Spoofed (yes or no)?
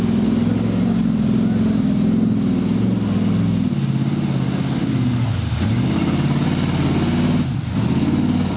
no